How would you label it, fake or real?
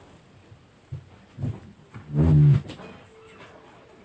real